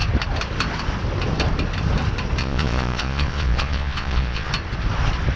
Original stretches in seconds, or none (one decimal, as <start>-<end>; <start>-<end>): 0.0-2.4; 4.5-5.4